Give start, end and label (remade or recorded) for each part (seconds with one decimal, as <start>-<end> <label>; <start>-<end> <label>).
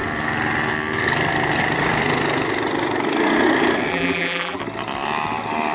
0.0-3.9 recorded; 3.9-4.6 remade; 4.6-5.7 recorded